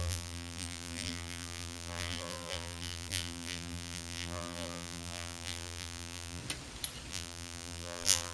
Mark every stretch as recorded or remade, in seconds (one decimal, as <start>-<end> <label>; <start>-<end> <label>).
0.0-6.4 remade; 6.4-7.1 recorded; 7.1-8.3 remade